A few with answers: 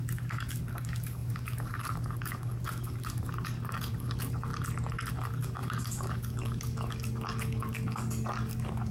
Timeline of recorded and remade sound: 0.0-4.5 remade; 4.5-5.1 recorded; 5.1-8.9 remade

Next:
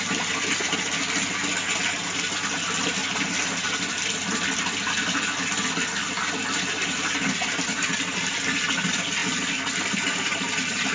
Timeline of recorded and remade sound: 0.0-10.9 recorded

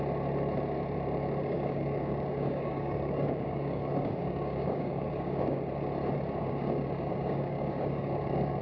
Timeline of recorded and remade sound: 0.0-1.4 recorded; 1.4-5.6 remade; 5.6-6.4 recorded; 6.4-8.6 remade